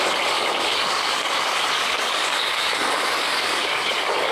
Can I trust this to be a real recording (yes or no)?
no